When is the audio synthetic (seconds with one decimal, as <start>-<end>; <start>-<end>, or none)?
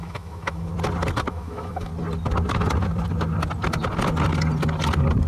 0.0-0.7; 1.3-1.9